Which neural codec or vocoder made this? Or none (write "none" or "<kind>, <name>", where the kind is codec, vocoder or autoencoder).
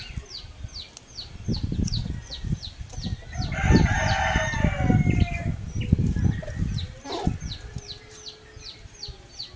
none